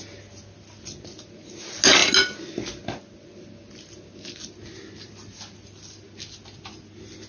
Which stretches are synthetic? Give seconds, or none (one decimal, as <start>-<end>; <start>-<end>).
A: none